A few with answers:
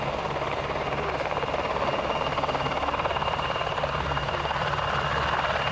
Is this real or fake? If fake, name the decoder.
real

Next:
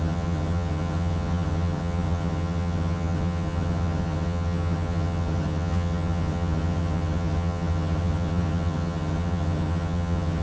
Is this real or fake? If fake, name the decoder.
fake, vocoder, HiFi-GAN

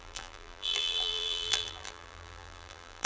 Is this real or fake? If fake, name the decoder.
fake, vocoder, BigVGAN v2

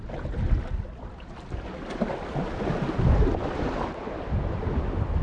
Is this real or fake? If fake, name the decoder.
real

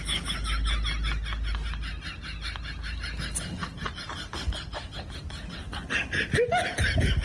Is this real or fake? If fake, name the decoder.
real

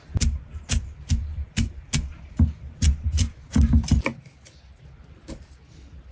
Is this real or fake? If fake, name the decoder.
real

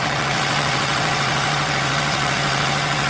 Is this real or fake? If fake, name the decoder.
fake, vocoder, WaveNeXt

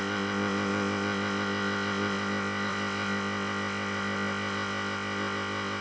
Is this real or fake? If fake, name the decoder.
fake, codec, ZipCodec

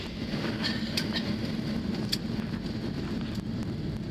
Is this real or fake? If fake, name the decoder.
real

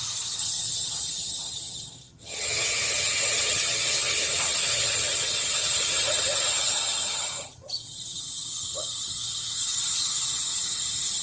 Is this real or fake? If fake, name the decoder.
fake, vocoder, HiFi-GAN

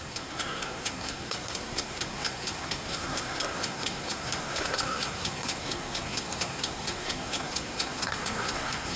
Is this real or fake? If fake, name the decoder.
fake, codec, SNAC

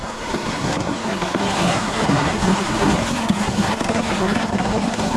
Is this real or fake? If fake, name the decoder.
fake, codec, SNAC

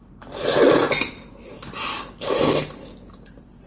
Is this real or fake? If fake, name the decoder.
real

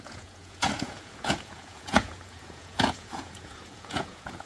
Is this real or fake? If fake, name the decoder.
fake, vocoder, Vocos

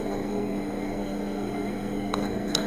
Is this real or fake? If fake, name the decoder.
fake, codec, SNAC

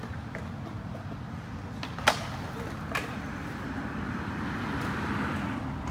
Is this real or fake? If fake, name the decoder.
real